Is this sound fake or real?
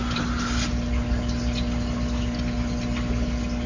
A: real